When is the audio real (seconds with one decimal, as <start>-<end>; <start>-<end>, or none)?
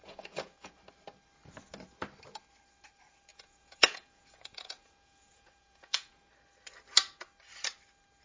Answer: 0.7-3.3; 6.3-8.2